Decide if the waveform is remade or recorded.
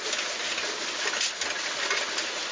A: recorded